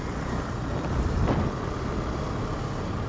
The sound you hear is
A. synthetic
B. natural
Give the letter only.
B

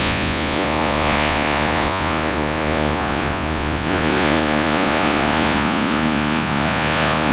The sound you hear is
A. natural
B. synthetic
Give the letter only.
B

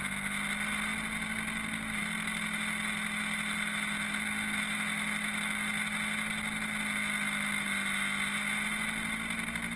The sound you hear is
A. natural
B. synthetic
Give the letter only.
A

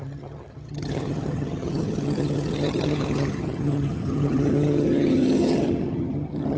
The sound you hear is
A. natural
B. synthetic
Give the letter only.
B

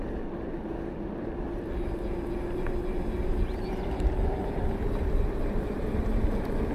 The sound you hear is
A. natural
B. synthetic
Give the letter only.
A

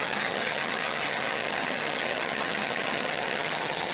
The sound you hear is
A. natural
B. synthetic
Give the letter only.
B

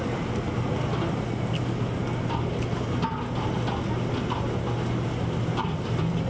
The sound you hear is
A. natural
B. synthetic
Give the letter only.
A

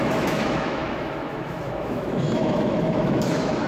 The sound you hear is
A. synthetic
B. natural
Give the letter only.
A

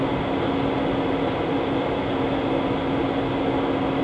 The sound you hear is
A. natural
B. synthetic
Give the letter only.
A